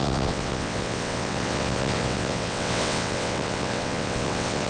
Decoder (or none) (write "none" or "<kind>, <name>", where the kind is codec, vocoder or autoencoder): vocoder, WaveNeXt